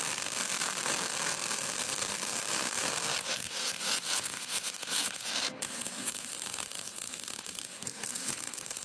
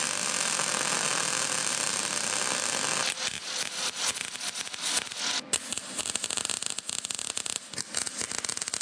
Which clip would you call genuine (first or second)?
second